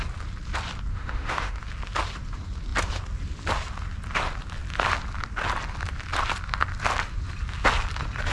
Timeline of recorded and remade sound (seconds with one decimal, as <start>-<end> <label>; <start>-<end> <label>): 0.0-0.9 recorded; 0.9-1.6 remade; 1.6-8.3 recorded